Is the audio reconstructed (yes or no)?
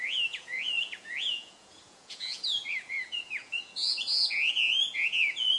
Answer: yes